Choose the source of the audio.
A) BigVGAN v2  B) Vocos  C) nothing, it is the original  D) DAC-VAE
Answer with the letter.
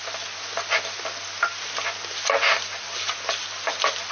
C